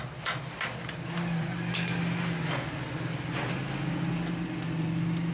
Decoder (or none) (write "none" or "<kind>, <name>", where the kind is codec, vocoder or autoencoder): none